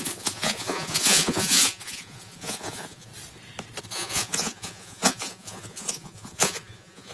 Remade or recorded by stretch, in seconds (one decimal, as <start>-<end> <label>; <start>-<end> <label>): 0.0-3.1 remade; 3.1-3.8 recorded; 3.8-7.1 remade